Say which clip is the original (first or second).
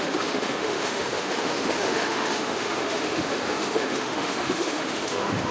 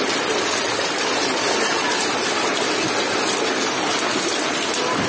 second